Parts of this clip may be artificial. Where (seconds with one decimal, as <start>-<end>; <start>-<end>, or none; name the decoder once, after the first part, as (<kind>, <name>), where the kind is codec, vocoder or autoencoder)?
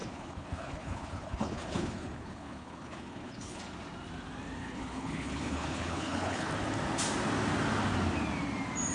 0.0-3.6 (codec, HILCodec); 4.6-6.5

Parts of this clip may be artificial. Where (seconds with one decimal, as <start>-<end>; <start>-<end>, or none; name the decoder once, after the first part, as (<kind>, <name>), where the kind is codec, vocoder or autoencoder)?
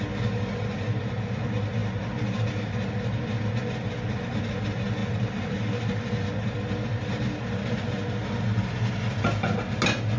none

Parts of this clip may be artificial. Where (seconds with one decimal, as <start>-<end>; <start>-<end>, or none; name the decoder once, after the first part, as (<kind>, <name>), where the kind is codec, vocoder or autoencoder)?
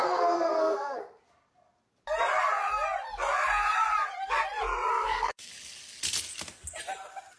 0.0-1.2 (codec, SNAC); 4.9-5.5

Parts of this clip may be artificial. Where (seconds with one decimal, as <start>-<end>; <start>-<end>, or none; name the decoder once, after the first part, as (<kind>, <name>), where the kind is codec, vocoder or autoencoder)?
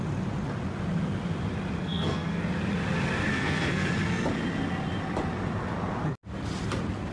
1.8-2.4 (codec, SNAC); 3.3-3.9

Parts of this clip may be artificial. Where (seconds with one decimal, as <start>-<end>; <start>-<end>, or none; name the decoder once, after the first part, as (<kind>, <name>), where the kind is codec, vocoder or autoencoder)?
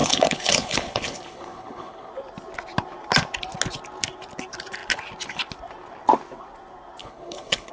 0.0-2.1 (codec, HILCodec); 7.0-7.7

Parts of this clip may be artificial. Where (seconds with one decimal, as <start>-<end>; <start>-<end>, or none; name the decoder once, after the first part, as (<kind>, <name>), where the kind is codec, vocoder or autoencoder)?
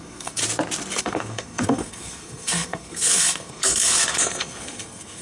0.0-0.4 (codec, SNAC); 1.0-5.2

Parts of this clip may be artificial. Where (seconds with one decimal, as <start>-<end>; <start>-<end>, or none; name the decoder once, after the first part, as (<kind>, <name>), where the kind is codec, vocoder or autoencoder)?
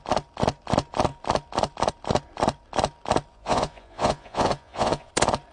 3.3-5.1 (vocoder, Vocos)